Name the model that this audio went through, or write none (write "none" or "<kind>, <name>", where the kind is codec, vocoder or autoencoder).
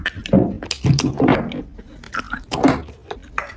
none